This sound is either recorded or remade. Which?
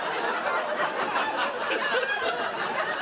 recorded